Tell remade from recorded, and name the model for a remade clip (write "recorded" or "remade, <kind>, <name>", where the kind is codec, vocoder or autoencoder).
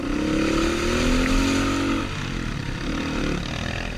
recorded